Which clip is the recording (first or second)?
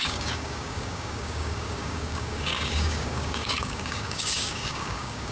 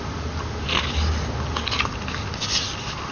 second